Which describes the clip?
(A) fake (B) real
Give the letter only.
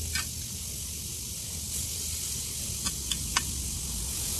B